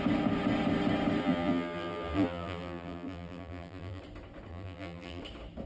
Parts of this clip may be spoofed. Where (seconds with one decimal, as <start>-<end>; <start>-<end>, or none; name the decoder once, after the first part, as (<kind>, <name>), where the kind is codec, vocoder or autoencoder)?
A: 1.2-4.0 (vocoder, BigVGAN v2); 4.5-5.2